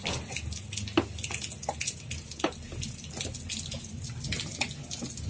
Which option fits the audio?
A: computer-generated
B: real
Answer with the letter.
B